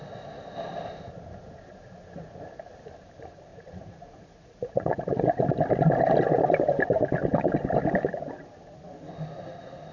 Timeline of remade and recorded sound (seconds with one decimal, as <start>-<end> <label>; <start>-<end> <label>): 0.0-3.5 recorded; 3.5-5.4 remade; 5.4-9.9 recorded